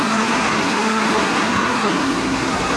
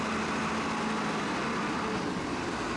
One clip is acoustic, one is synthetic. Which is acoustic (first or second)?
second